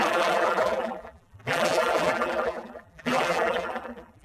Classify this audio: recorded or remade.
remade